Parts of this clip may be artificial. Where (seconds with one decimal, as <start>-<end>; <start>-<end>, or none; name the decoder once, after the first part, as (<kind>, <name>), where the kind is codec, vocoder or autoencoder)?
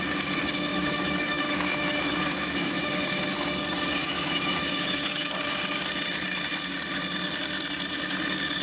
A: 0.7-2.9 (autoencoder, DAC-VAE); 4.0-5.3